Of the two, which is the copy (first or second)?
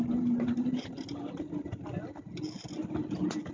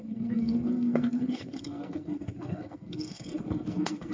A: second